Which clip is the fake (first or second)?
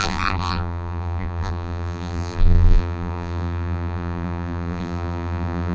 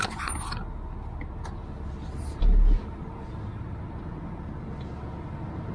first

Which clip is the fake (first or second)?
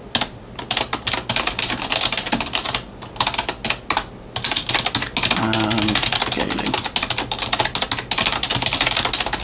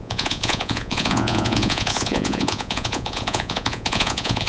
second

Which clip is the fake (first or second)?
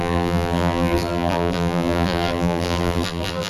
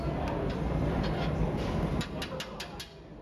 first